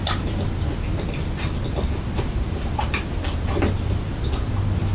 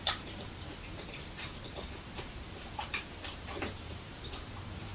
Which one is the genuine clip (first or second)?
first